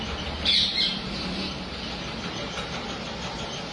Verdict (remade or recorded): remade